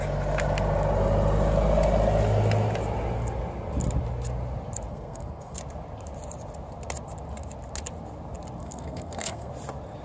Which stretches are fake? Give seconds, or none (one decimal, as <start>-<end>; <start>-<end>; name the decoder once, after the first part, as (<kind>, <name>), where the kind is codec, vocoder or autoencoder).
4.9-5.6 (codec, SNAC); 8.6-9.5

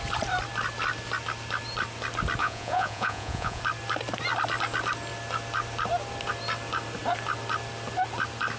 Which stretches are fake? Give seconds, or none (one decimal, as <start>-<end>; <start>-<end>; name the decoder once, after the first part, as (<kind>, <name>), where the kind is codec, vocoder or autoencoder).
2.4-3.6 (vocoder, Vocos)

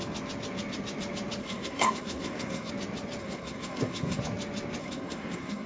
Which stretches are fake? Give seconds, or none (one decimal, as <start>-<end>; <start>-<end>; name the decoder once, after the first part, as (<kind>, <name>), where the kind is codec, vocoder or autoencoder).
1.4-2.7 (codec, SNAC); 3.2-4.2; 4.8-5.7

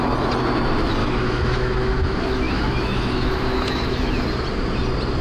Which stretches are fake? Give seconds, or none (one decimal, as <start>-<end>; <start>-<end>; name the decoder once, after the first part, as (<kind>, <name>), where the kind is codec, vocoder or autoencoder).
1.0-4.1 (autoencoder, DAC-VAE)

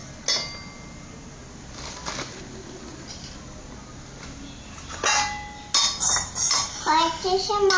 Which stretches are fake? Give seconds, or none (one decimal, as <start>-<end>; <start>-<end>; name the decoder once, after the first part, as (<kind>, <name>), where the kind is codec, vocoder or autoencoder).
none

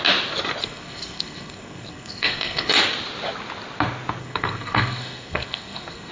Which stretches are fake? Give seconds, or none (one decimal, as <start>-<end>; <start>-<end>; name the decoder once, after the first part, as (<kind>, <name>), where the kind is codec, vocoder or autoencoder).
0.6-2.7 (codec, SNAC); 4.2-6.1

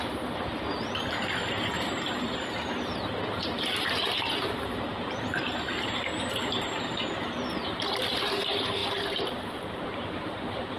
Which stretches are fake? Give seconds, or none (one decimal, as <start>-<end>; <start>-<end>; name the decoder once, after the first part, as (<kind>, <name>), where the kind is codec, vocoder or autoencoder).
1.5-10.8 (vocoder, BigVGAN v2)

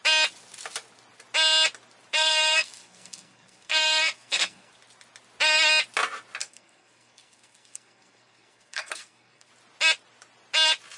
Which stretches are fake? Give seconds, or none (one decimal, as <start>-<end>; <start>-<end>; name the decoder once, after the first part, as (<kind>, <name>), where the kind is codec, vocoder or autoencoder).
2.1-4.7 (codec, SNAC); 6.4-9.5